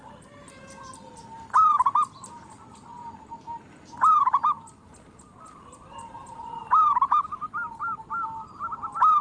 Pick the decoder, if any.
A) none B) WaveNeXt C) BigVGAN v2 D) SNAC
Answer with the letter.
A